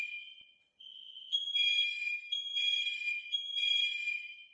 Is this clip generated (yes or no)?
yes